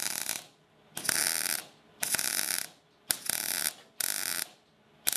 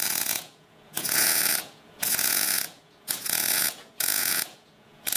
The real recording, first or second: first